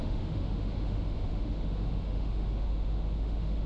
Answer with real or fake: fake